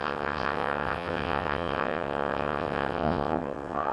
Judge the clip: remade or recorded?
remade